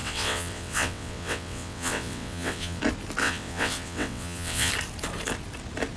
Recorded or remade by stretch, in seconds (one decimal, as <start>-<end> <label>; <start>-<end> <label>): 0.0-2.8 remade; 2.8-3.2 recorded; 3.2-4.7 remade; 4.7-6.0 recorded